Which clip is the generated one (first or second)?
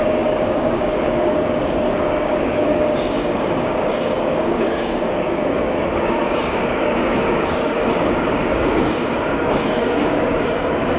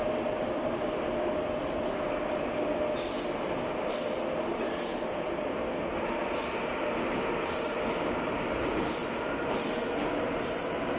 first